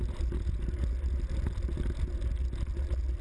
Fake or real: real